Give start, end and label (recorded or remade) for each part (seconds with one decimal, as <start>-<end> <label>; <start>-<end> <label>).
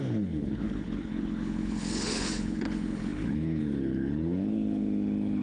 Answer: 0.0-5.4 remade